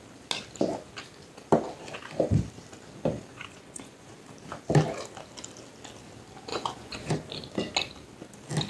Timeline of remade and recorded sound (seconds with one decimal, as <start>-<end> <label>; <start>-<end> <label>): 0.0-3.3 recorded; 3.3-4.2 remade; 4.2-6.5 recorded; 6.5-7.1 remade; 7.1-8.7 recorded